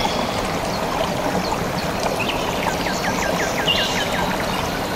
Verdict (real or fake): real